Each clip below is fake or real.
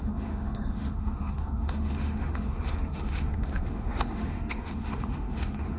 fake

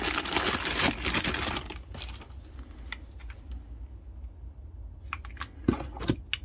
real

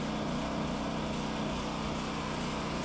real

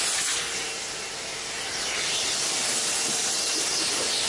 real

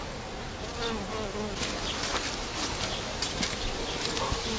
real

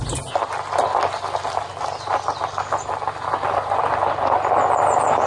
real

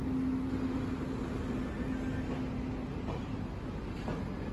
real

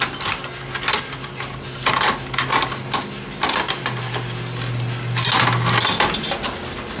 real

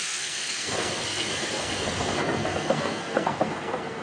fake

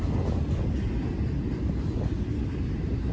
real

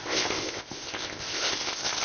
fake